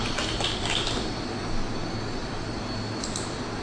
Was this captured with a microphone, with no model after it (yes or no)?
yes